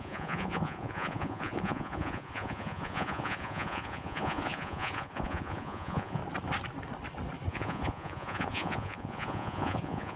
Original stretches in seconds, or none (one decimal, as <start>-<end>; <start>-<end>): 6.2-7.5

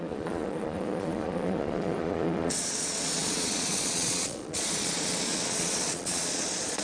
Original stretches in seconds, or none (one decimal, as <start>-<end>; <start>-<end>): none

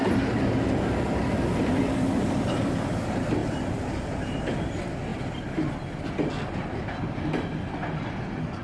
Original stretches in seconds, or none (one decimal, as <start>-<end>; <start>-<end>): 0.0-8.6

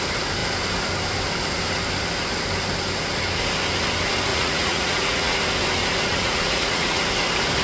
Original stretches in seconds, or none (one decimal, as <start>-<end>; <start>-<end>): 0.0-4.3; 5.4-6.1; 7.0-7.6

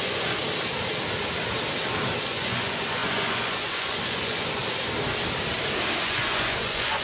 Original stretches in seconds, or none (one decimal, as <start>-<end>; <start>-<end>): 0.4-2.2; 4.6-6.0